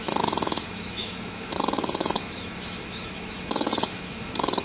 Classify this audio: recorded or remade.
remade